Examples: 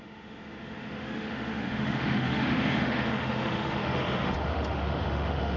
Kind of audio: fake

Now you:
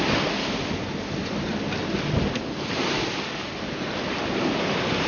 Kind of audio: real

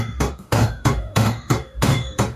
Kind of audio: fake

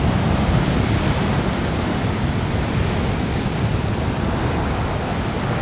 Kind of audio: real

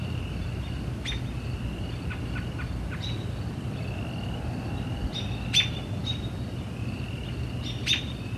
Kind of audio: real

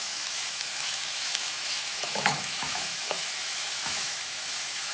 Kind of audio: fake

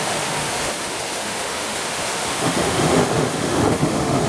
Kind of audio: fake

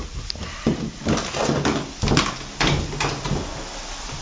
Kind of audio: real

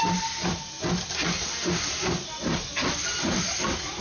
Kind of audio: real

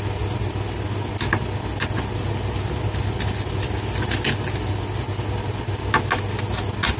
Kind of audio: real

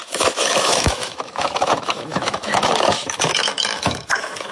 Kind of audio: fake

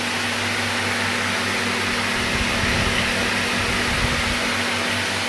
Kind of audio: real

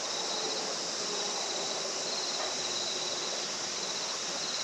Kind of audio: real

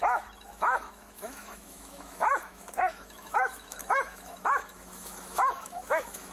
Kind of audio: fake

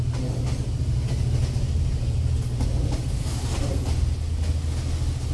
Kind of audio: real